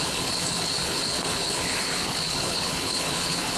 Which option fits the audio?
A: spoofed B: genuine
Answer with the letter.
A